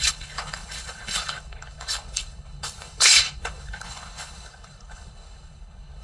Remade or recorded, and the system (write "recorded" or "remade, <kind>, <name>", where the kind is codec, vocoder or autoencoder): remade, codec, HILCodec